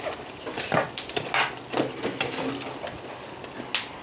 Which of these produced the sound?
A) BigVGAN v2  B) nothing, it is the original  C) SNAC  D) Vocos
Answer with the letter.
B